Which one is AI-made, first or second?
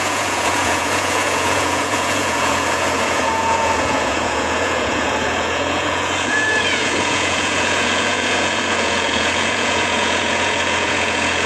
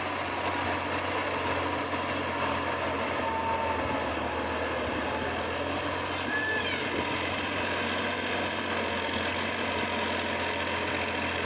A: first